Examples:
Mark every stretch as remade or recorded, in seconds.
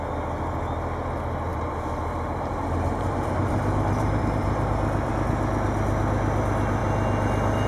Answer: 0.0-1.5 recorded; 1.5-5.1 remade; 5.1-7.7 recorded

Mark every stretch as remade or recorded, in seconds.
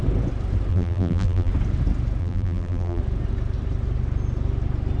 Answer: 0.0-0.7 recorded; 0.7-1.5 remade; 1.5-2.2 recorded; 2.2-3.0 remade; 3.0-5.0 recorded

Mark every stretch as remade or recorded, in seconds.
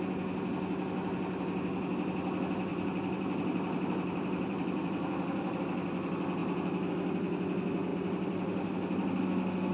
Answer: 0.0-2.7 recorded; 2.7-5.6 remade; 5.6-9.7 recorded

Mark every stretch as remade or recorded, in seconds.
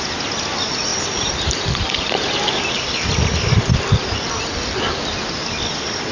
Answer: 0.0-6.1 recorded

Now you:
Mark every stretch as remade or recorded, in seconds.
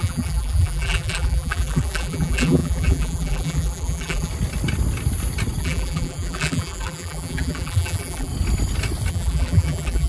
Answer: 0.0-4.3 remade; 4.3-5.6 recorded; 5.6-8.3 remade; 8.3-9.1 recorded; 9.1-10.1 remade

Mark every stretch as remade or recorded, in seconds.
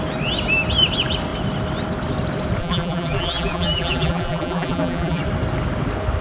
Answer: 0.0-2.6 recorded; 2.6-5.2 remade; 5.2-6.2 recorded